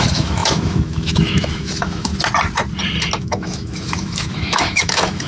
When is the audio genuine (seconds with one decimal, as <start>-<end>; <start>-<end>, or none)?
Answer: 2.1-3.2